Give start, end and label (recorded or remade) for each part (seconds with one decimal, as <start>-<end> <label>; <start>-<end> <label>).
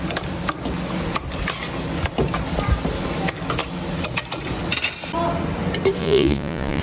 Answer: 0.0-6.0 recorded; 6.0-6.8 remade